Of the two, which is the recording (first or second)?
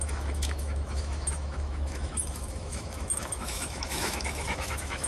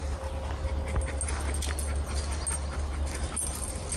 second